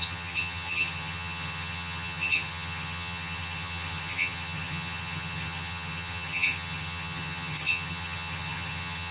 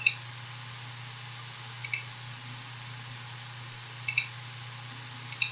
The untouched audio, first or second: second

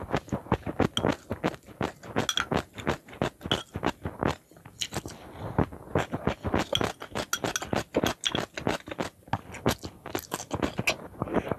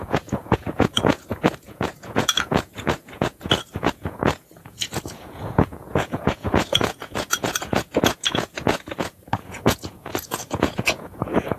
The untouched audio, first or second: first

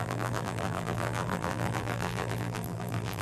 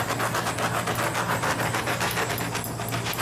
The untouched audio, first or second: second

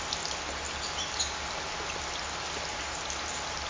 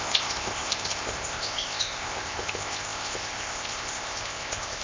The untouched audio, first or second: first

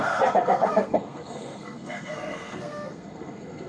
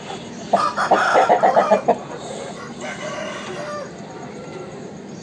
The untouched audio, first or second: second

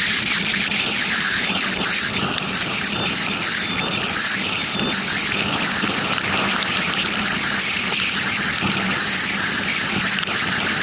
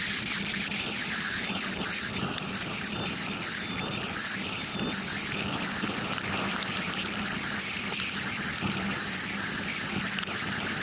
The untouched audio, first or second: second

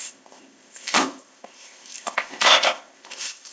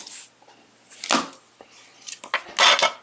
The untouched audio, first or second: second